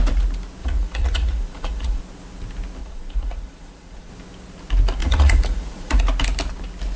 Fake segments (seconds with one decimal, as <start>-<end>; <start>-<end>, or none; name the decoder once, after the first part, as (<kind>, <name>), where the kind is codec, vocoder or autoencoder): 0.6-2.0 (vocoder, Vocos); 2.8-4.1; 5.0-6.0